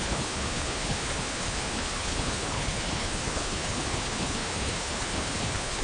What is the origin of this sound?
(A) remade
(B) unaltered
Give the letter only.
A